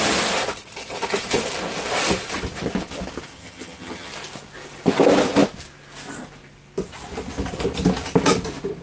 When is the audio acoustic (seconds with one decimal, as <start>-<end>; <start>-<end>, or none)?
0.0-3.3; 4.1-8.8